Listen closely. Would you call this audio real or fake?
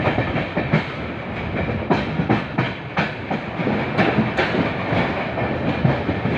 real